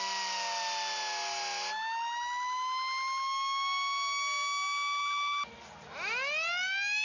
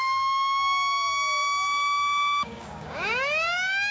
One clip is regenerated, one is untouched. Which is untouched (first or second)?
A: first